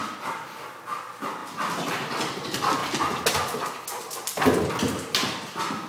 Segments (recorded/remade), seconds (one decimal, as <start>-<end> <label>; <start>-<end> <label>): 0.0-5.9 recorded